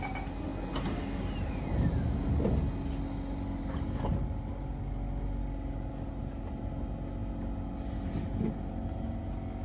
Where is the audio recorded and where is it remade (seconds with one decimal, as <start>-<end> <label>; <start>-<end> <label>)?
0.0-9.6 recorded